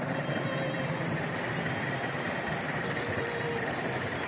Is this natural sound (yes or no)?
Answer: yes